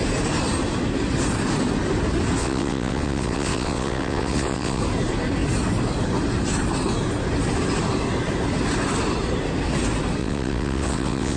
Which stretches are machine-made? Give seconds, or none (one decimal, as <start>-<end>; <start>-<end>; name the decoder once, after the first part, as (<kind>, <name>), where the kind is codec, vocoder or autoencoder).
2.4-4.8 (vocoder, WaveNeXt); 10.2-11.4